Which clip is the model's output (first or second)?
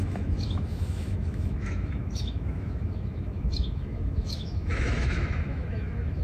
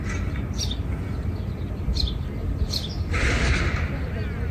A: first